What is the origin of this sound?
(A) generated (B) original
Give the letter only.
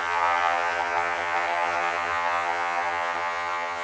A